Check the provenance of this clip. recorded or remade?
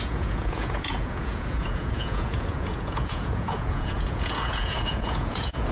remade